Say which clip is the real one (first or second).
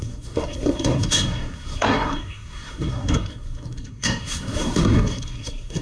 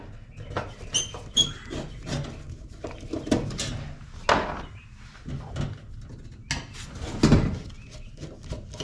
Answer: second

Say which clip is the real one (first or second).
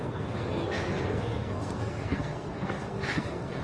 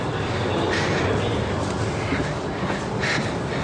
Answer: second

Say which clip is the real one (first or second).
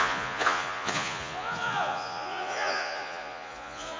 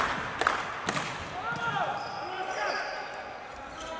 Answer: second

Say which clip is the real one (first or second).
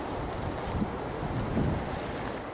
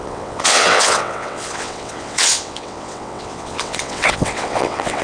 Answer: first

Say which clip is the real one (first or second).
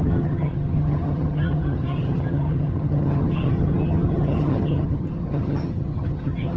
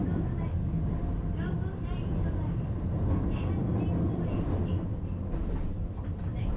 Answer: second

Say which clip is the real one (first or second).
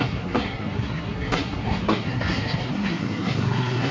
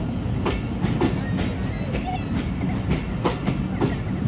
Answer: second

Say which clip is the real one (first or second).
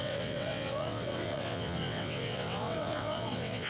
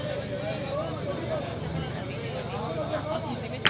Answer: second